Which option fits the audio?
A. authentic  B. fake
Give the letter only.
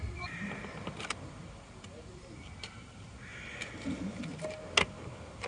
A